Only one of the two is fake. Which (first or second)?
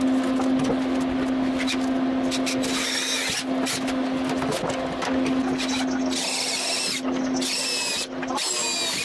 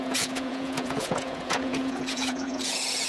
second